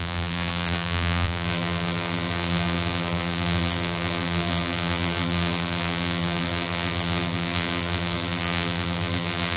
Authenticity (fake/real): fake